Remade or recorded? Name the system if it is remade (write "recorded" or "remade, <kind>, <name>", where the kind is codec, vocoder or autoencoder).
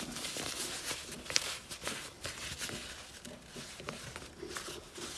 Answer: recorded